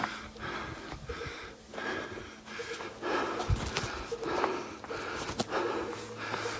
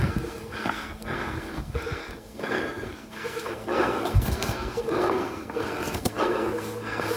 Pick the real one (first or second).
first